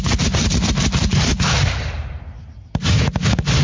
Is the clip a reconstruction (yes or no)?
no